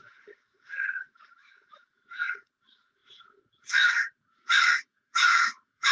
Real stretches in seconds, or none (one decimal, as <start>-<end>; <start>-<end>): none